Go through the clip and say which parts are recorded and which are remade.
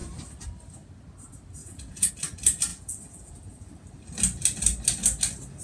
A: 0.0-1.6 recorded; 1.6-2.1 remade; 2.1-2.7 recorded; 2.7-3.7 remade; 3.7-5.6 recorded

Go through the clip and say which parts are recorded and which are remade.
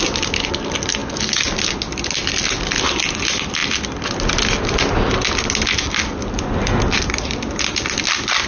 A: 0.0-8.5 recorded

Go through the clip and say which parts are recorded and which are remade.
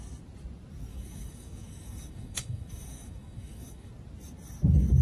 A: 0.0-0.9 recorded; 0.9-3.9 remade; 3.9-5.0 recorded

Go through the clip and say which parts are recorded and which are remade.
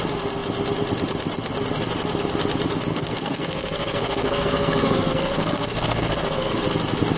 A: 0.0-2.9 recorded; 2.9-6.6 remade; 6.6-7.2 recorded